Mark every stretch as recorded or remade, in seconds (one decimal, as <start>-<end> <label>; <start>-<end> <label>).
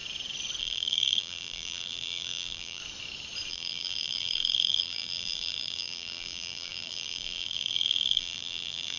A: 0.0-0.6 recorded; 0.6-2.8 remade; 2.8-3.5 recorded; 3.5-9.0 remade